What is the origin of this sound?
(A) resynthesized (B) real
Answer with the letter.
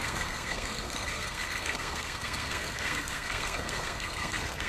A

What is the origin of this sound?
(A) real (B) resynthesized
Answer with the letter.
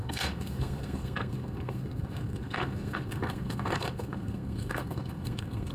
B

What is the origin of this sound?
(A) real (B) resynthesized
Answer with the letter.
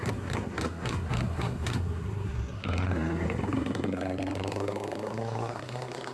B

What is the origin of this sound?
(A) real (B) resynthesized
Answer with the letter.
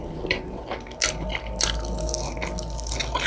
A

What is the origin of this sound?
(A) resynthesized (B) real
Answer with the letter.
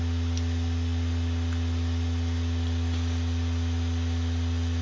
B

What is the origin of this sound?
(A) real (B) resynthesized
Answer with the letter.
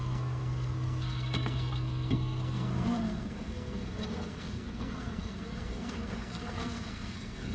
B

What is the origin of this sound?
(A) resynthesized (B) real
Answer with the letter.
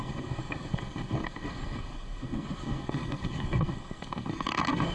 A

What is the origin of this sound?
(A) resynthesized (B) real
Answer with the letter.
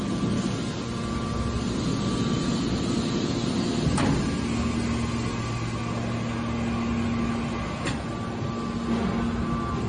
B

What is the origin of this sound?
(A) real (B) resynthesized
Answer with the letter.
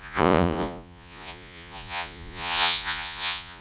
B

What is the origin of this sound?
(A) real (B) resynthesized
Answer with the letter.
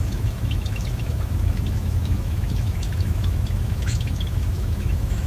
B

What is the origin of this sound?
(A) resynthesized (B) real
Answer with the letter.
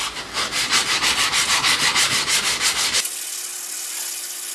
B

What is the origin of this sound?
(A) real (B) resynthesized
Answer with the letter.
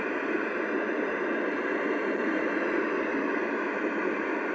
A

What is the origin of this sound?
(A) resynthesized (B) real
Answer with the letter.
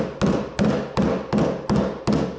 B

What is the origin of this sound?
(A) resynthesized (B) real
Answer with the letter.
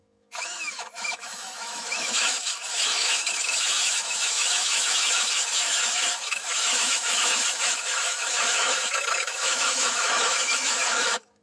A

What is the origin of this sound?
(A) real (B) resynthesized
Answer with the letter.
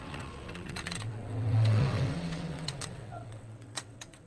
B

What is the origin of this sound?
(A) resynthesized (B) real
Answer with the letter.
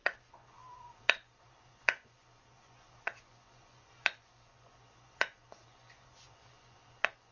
A